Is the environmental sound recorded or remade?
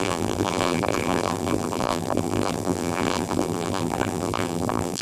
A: remade